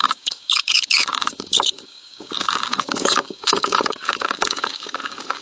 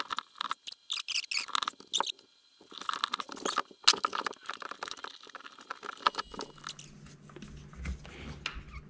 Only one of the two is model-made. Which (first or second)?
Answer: first